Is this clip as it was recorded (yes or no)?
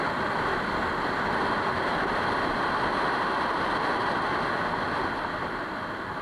yes